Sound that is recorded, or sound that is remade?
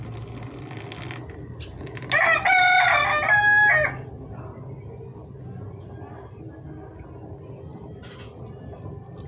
recorded